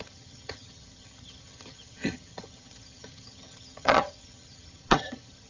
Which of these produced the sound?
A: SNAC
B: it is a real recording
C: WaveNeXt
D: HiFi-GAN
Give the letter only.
D